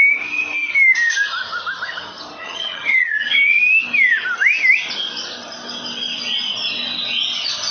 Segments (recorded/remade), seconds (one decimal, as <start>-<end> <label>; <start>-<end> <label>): 0.0-2.4 recorded; 2.4-3.6 remade; 3.6-7.7 recorded

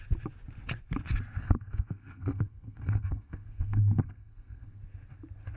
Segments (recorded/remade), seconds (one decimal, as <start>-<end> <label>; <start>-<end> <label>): 0.0-1.4 recorded; 1.4-4.8 remade; 4.8-5.6 recorded

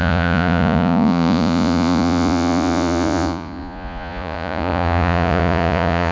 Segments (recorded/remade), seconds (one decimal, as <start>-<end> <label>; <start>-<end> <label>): 0.0-6.1 remade